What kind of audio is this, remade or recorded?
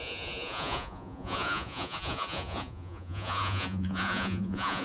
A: remade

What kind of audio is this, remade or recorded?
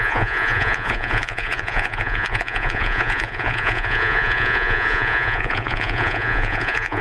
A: remade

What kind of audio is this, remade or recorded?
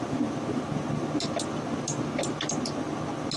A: recorded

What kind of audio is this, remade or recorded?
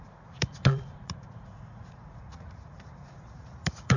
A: remade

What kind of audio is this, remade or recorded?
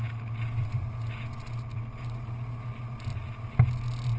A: recorded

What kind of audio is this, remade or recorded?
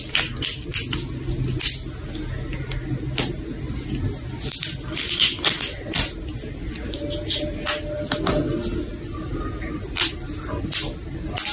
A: recorded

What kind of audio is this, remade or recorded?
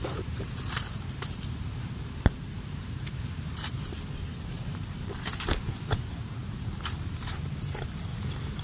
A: remade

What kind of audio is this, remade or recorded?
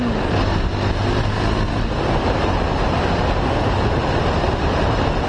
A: recorded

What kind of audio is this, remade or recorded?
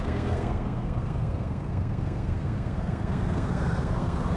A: remade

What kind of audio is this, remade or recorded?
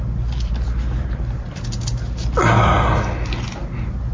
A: recorded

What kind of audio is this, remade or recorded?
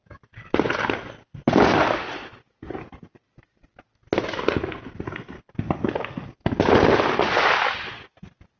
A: recorded